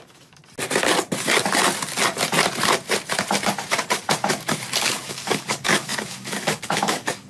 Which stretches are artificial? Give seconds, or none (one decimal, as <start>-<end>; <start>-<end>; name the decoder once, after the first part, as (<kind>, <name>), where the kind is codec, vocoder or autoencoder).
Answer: 0.0-0.4 (codec, DAC); 4.8-7.3